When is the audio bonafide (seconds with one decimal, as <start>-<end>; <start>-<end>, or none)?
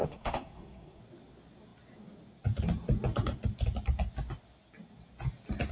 1.0-5.7